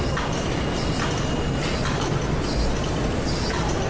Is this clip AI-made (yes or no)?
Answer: no